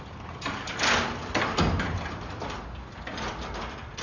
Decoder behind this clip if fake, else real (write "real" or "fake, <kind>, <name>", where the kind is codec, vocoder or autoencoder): real